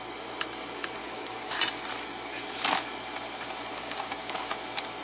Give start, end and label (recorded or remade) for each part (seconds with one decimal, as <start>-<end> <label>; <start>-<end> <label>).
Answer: 0.0-1.0 recorded; 1.0-1.6 remade; 1.6-3.7 recorded; 3.7-4.5 remade; 4.5-5.0 recorded